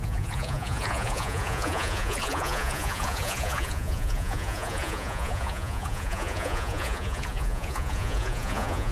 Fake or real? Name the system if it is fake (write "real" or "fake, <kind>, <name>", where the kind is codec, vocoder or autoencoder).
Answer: fake, vocoder, Vocos